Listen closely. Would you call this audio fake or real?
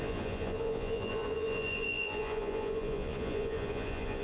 fake